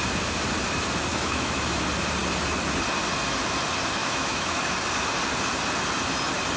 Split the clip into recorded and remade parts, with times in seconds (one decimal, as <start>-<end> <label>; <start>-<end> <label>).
0.0-1.1 recorded; 1.1-1.8 remade; 1.8-4.0 recorded; 4.0-4.6 remade; 4.6-6.6 recorded